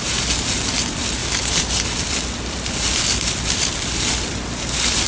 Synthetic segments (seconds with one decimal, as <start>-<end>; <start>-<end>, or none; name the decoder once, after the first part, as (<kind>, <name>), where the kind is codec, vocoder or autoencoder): none